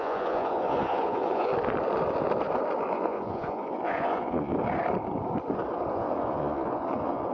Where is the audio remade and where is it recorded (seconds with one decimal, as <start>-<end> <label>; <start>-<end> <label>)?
0.0-1.5 remade; 1.5-2.9 recorded; 2.9-4.5 remade; 4.5-5.9 recorded; 5.9-7.3 remade